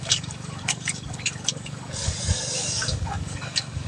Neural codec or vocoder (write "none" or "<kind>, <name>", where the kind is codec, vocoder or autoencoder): codec, DAC